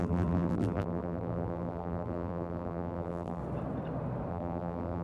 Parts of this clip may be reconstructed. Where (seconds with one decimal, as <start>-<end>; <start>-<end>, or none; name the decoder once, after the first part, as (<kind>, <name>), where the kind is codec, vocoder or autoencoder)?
0.0-3.4 (vocoder, BigVGAN v2); 4.3-5.0